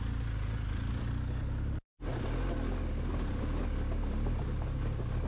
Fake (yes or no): no